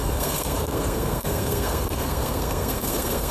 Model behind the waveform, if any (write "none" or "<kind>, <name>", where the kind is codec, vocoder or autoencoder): codec, SNAC